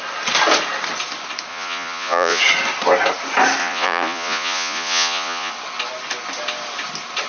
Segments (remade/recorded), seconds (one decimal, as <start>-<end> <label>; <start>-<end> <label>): 0.0-1.5 recorded; 1.5-2.4 remade; 2.4-3.6 recorded; 3.6-5.5 remade; 5.5-7.3 recorded